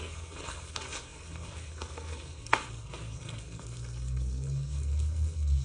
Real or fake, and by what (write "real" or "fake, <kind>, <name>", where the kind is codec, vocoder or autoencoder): fake, codec, SNAC